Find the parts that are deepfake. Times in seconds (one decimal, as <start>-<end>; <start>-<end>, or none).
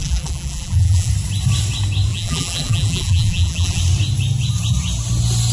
0.0-1.1; 2.1-3.8